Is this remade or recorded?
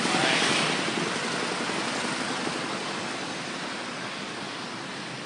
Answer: recorded